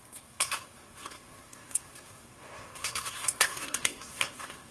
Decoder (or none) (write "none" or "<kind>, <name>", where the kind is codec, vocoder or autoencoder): codec, SNAC